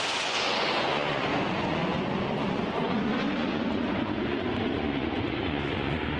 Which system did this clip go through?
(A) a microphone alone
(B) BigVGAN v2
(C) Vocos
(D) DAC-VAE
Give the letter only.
C